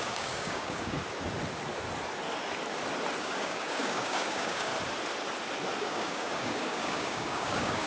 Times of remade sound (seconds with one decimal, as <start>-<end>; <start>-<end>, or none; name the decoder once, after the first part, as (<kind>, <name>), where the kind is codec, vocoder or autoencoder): 0.0-1.0 (codec, DAC); 3.2-4.7; 5.8-7.9